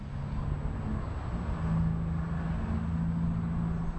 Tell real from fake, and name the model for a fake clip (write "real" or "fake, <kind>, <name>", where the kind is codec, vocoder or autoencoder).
real